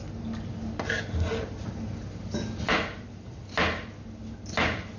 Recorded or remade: recorded